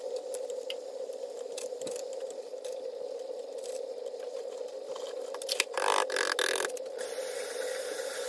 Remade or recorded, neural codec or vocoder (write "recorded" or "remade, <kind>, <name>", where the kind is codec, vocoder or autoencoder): recorded